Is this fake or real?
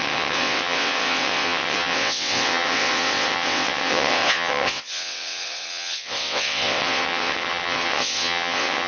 fake